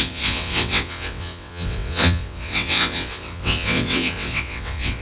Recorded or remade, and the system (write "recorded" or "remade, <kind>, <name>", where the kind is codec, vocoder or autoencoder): remade, vocoder, WaveNeXt